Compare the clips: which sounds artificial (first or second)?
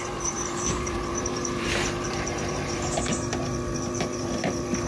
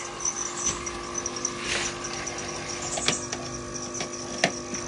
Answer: first